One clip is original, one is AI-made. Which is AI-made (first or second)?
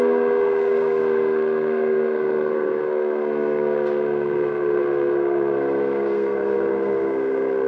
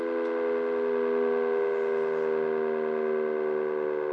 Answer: first